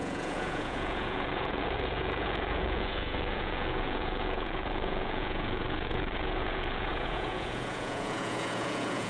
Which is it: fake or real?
fake